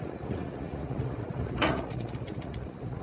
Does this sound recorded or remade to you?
remade